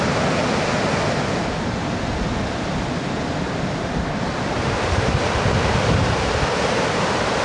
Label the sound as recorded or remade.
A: recorded